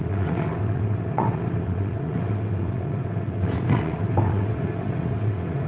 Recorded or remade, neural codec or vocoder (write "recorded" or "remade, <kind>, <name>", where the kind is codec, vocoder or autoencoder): remade, vocoder, WaveNeXt